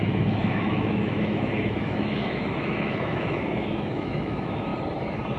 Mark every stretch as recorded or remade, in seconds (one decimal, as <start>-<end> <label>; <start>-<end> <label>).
0.0-4.7 remade; 4.7-5.4 recorded